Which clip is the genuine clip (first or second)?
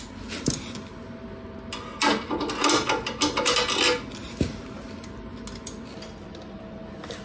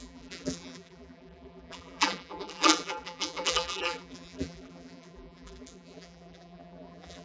first